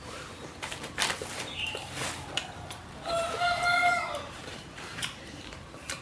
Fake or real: fake